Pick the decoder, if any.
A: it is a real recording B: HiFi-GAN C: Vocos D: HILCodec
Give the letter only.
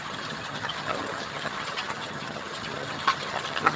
B